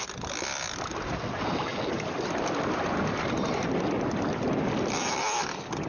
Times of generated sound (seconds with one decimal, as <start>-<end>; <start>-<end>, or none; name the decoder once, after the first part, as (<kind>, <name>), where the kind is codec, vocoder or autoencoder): none